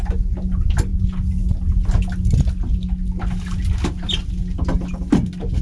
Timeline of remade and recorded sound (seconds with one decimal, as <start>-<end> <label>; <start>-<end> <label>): 0.0-5.6 recorded